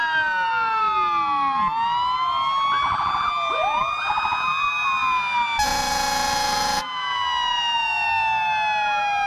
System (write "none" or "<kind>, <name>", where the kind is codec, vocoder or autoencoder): none